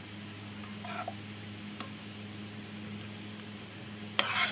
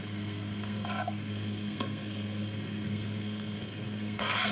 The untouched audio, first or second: first